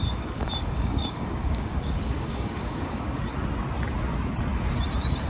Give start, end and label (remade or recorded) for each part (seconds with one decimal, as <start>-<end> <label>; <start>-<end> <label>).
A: 0.0-3.2 remade; 3.2-5.3 recorded